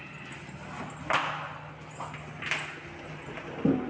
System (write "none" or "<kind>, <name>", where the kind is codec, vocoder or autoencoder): none